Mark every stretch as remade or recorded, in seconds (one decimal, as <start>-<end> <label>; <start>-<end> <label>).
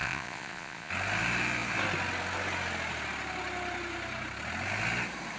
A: 0.0-0.9 remade; 0.9-5.4 recorded